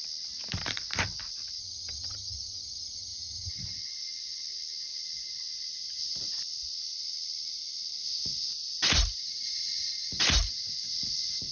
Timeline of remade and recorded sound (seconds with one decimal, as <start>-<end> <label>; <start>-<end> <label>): 0.0-1.6 recorded; 1.6-3.5 remade; 3.5-11.5 recorded